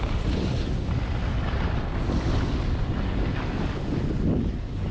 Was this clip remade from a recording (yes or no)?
no